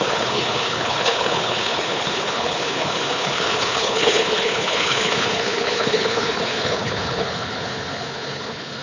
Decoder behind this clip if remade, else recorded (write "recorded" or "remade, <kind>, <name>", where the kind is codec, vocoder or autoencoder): remade, codec, HILCodec